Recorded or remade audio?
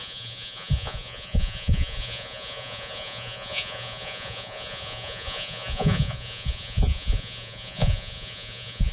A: remade